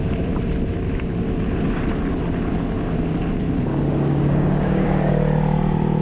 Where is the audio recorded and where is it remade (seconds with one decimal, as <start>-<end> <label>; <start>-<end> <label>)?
0.0-3.7 recorded; 3.7-5.1 remade; 5.1-6.0 recorded